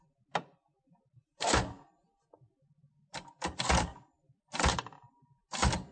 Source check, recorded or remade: recorded